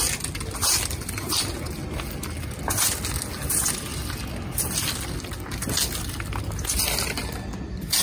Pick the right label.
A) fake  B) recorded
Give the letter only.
B